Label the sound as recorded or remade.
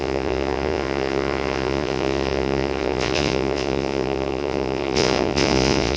remade